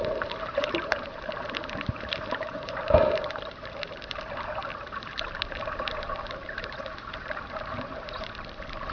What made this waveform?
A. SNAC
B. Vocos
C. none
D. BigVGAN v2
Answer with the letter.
D